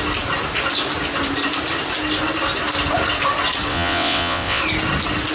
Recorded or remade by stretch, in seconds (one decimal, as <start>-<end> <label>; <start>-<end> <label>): 0.0-3.7 recorded; 3.7-4.6 remade; 4.6-5.3 recorded